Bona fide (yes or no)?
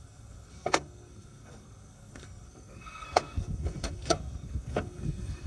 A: no